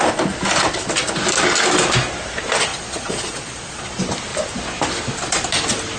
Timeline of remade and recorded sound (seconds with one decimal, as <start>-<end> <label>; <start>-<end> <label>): 0.0-2.7 recorded; 2.7-3.9 remade; 3.9-6.0 recorded